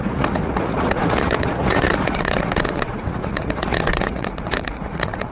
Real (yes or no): no